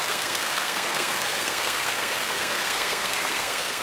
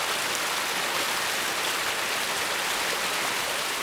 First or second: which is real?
second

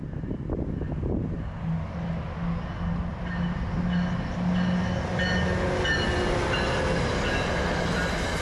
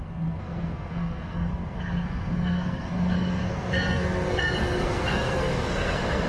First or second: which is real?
first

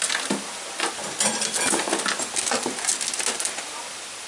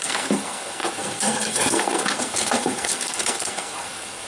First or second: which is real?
first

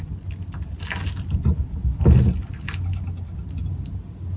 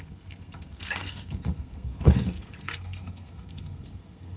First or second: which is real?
first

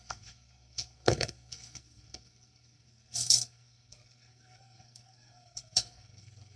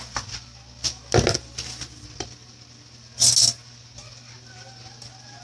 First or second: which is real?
second